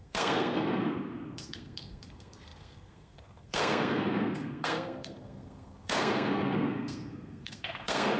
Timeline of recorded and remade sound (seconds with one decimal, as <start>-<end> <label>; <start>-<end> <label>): 0.0-8.2 remade